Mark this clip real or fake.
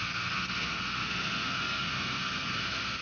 fake